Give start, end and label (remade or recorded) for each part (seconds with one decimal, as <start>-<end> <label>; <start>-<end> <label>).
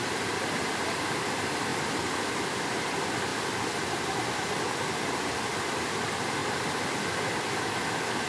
0.0-3.3 remade; 3.3-5.3 recorded; 5.3-8.3 remade